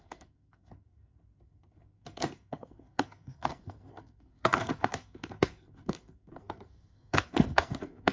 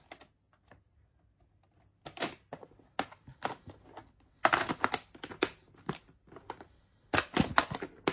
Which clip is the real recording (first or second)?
second